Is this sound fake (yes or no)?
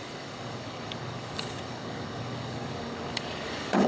yes